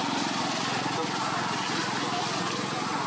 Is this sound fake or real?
real